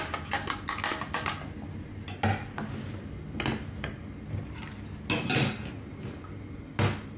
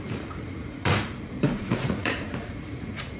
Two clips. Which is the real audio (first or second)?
first